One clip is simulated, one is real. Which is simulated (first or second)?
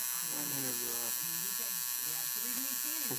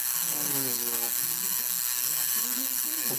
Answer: second